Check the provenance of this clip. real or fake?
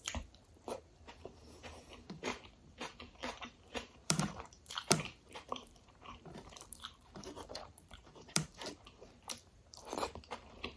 fake